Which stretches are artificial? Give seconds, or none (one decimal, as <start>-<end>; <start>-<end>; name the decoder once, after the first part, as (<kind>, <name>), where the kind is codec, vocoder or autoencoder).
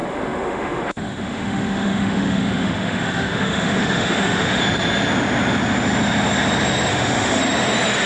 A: 0.0-4.6 (autoencoder, DAC-VAE); 6.9-7.4